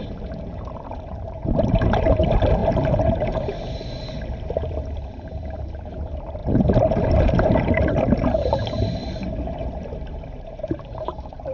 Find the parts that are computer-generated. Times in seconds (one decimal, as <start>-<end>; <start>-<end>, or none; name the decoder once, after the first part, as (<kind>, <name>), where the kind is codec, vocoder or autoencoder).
0.0-6.4 (vocoder, BigVGAN v2); 7.0-11.5